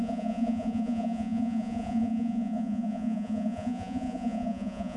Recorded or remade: remade